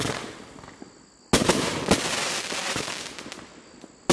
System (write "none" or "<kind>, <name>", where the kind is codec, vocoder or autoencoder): none